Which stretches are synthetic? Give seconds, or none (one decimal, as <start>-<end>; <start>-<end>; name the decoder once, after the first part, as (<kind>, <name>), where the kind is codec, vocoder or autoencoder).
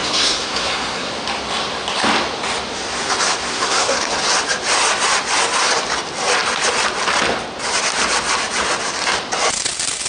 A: 0.0-1.1 (codec, SNAC); 3.5-4.2